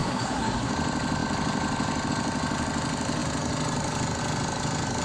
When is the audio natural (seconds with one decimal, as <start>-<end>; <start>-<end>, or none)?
0.7-5.0